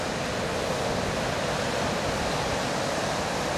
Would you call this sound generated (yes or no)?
no